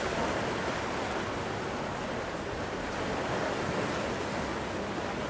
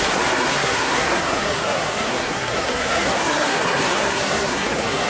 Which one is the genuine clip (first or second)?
first